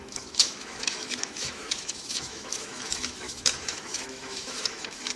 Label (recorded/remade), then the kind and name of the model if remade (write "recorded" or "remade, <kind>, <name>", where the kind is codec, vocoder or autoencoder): remade, autoencoder, DAC-VAE